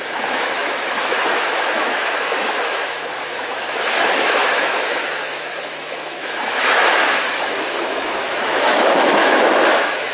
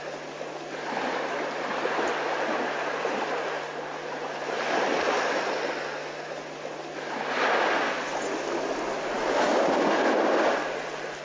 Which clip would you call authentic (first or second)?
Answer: second